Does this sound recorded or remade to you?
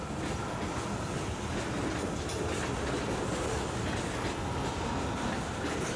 recorded